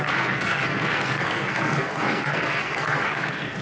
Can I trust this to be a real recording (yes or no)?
no